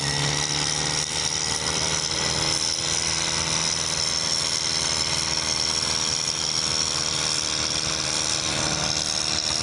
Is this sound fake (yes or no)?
no